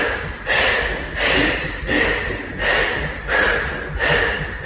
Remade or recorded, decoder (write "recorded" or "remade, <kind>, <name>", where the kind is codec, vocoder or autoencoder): recorded